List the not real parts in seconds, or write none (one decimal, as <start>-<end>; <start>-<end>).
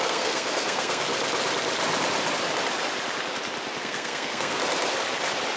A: 0.0-1.1; 3.8-4.6